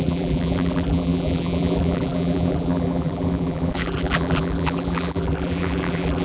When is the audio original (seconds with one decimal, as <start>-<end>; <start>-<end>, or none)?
none